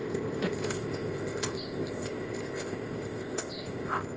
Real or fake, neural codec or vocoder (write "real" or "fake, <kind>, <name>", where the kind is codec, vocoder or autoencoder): fake, codec, ZipCodec